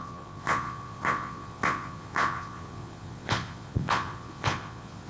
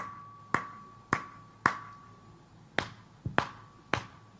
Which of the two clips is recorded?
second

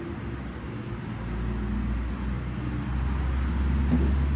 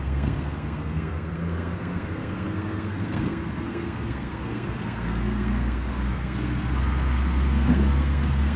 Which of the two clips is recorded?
first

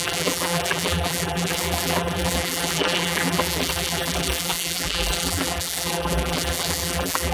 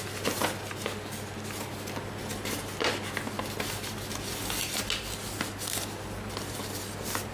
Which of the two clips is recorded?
second